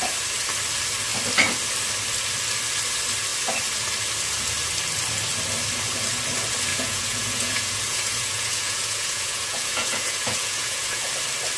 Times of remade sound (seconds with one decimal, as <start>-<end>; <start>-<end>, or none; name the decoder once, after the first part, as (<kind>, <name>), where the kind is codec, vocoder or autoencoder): 6.7-11.1 (vocoder, Vocos)

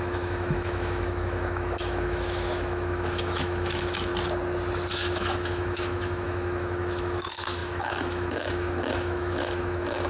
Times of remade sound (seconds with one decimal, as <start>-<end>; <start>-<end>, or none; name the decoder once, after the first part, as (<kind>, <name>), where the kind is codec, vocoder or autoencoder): 0.0-4.1 (autoencoder, DAC-VAE); 4.9-10.1

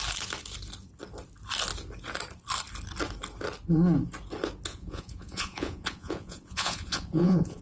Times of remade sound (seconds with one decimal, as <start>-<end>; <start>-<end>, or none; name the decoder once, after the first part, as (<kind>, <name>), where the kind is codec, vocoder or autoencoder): 4.7-7.6 (vocoder, Vocos)

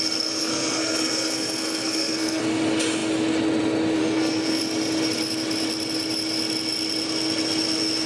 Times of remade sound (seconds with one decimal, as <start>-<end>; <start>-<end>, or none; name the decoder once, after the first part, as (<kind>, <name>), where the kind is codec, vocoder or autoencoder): 0.4-2.4 (codec, SNAC); 4.0-4.6

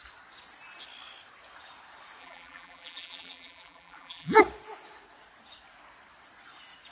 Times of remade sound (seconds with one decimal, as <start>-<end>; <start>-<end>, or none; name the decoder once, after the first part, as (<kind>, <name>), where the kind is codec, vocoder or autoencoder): 2.2-4.4 (vocoder, BigVGAN v2)